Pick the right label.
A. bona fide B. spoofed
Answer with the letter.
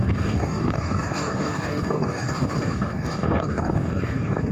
B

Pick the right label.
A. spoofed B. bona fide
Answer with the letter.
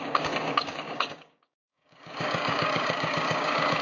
A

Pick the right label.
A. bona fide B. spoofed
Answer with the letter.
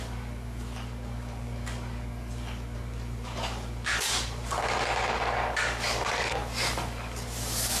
B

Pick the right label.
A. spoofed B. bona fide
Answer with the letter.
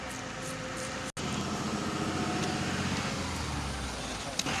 B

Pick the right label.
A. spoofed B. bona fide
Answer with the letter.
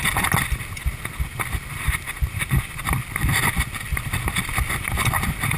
B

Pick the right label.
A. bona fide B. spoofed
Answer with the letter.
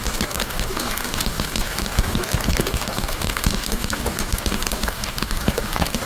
B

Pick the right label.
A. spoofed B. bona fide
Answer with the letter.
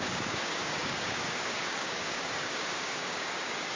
A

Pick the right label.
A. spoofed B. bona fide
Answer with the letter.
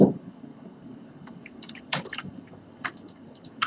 A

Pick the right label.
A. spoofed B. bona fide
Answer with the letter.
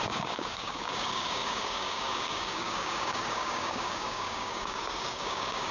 A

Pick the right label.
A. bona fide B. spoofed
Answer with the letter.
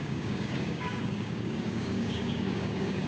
B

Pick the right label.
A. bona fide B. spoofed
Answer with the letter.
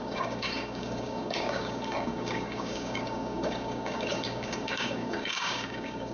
B